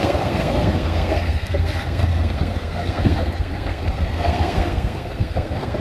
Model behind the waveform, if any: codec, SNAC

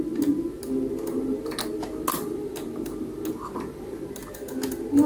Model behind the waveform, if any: none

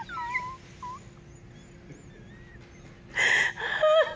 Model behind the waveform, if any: none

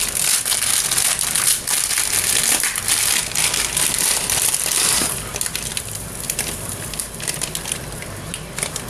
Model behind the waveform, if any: vocoder, BigVGAN v2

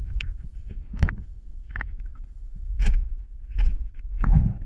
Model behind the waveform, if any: autoencoder, DAC-VAE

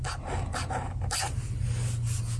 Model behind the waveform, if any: none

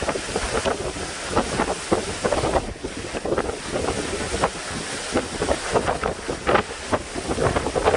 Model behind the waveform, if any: none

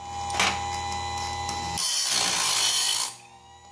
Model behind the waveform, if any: none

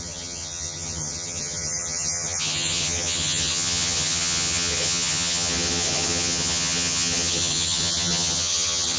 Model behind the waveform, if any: vocoder, HiFi-GAN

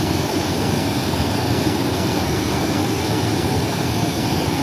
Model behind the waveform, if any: codec, SNAC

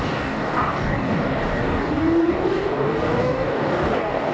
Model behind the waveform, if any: codec, DAC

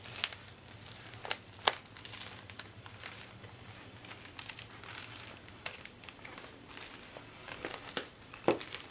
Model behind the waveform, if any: none